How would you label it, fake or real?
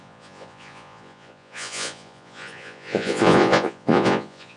fake